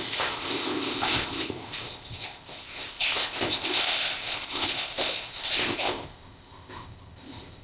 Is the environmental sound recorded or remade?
remade